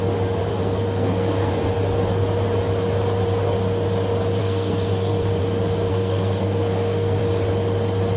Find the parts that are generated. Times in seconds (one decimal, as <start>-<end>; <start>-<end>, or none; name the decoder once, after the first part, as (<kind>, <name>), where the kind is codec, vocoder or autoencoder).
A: 0.5-1.5 (codec, SNAC); 4.4-5.4; 5.9-7.2